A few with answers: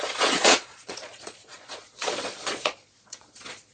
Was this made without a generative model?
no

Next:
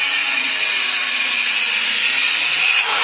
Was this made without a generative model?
no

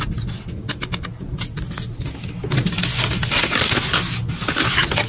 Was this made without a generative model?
yes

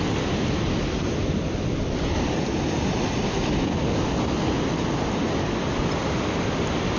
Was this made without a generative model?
yes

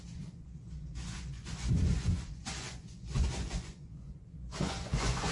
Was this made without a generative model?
no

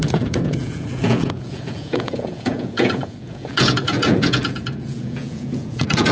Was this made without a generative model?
no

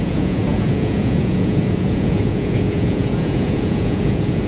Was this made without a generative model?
no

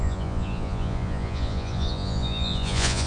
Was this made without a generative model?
no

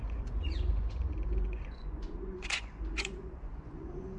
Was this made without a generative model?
no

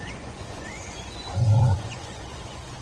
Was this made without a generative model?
no